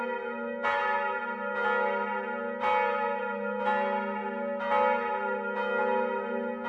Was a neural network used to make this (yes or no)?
no